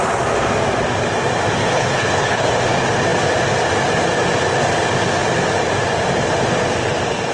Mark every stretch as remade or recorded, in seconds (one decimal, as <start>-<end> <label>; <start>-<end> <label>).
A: 0.0-1.6 recorded; 1.6-2.5 remade; 2.5-7.3 recorded